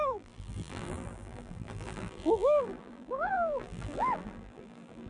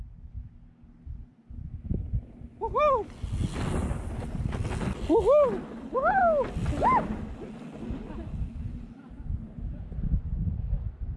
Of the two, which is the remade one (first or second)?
first